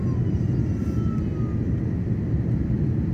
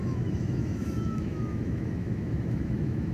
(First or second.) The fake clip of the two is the second